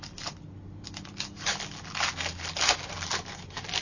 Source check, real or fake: real